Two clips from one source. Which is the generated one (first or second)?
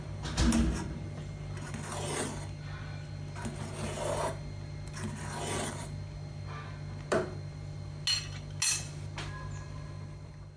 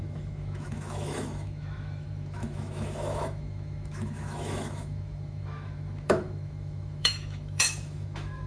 second